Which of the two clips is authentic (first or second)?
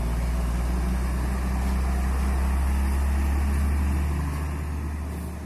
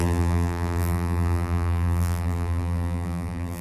first